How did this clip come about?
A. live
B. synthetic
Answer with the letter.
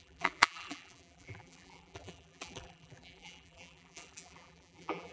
B